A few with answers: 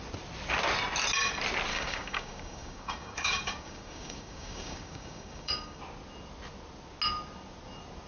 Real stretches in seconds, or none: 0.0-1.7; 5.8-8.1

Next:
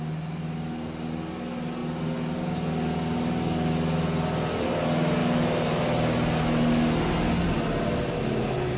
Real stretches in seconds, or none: 0.0-8.8

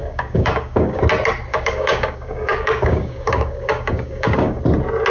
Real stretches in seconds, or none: 1.0-1.5; 4.6-5.1

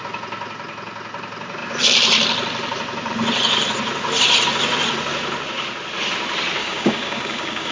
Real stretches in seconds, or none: 0.0-6.6

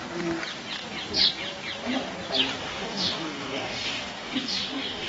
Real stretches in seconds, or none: 0.0-2.6

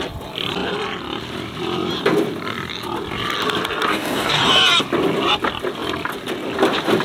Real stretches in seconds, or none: 0.0-3.9; 4.4-7.0

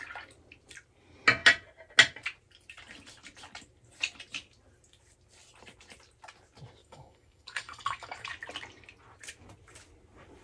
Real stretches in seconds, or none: 0.0-6.8; 8.3-10.4

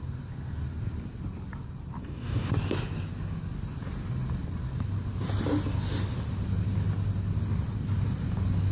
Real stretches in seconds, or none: 0.0-2.0; 2.5-8.7